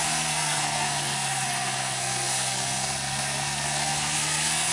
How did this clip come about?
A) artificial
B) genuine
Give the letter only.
A